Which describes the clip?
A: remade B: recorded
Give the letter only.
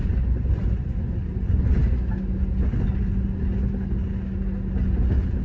B